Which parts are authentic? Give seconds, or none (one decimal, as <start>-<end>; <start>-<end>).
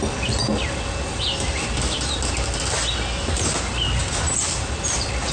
0.0-5.3